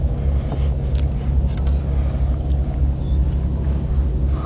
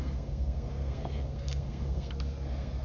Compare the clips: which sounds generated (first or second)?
second